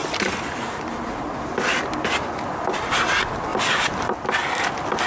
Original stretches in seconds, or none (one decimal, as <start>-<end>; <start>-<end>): 0.0-5.1